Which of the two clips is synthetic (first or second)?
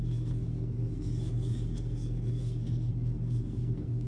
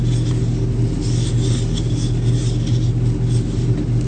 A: first